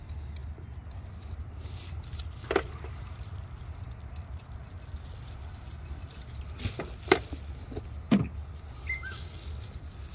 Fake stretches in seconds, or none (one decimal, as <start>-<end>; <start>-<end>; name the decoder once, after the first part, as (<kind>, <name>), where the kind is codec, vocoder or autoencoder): none